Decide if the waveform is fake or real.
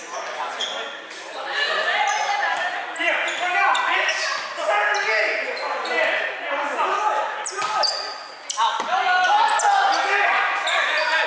real